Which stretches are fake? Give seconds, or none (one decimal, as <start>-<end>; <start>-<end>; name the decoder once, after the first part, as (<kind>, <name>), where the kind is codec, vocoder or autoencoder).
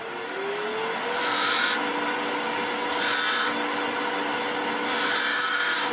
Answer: 5.3-5.9 (codec, DAC)